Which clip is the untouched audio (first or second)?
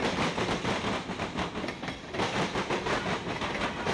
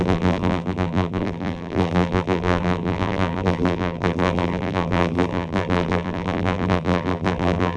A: first